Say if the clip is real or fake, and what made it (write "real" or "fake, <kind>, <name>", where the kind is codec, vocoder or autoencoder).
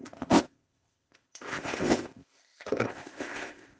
fake, codec, ZipCodec